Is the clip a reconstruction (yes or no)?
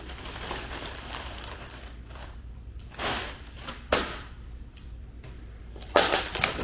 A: yes